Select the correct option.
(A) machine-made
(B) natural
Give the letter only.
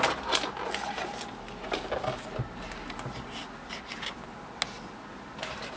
B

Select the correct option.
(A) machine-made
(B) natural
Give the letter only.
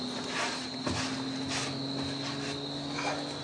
B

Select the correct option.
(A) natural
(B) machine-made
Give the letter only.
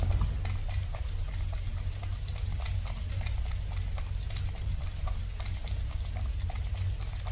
A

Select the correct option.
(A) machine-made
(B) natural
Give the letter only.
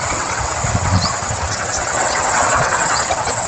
A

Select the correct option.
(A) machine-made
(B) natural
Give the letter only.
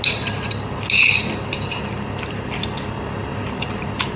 B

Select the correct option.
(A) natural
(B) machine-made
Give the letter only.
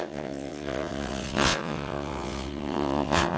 B